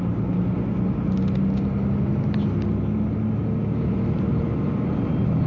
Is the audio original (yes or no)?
yes